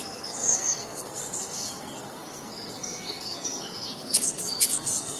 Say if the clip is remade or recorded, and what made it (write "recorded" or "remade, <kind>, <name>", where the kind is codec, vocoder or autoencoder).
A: remade, codec, SNAC